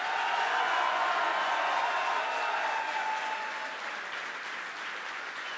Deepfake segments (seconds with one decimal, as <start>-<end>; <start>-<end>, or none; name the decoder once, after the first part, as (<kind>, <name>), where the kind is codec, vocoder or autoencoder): 0.0-2.0 (vocoder, Vocos); 2.7-3.6; 5.1-5.6